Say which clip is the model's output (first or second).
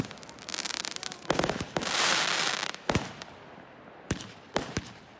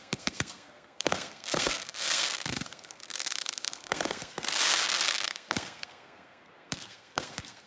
second